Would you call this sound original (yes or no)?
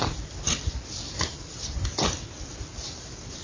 yes